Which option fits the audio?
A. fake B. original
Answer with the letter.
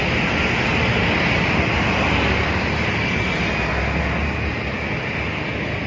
B